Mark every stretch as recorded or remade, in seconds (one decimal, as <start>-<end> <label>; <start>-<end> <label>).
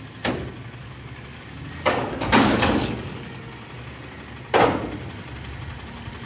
0.0-0.8 recorded; 0.8-3.4 remade; 3.4-6.3 recorded